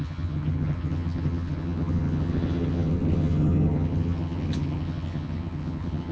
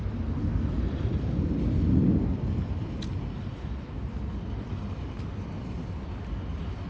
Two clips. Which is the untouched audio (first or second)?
second